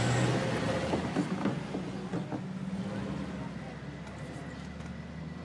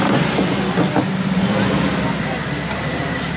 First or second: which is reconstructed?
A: second